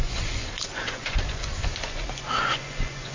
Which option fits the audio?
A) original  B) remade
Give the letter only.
B